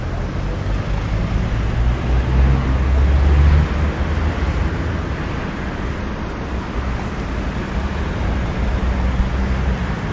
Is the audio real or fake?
real